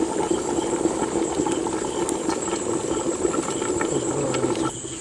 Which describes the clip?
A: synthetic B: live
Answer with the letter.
B